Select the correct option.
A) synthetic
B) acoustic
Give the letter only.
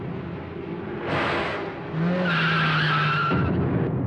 B